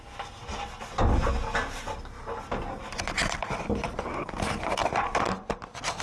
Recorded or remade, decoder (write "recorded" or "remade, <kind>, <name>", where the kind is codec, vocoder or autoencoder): recorded